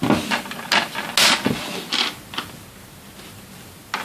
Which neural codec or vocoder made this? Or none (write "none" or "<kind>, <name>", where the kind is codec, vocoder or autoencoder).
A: none